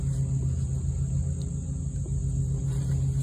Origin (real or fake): real